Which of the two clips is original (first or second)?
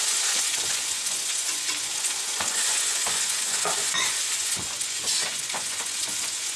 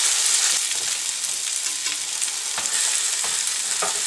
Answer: second